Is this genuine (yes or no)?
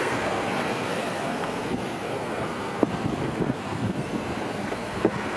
no